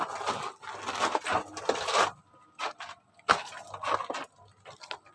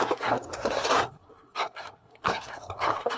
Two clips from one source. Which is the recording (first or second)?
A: first